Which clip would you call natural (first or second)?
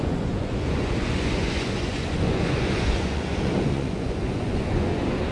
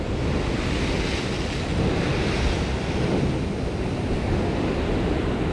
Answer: second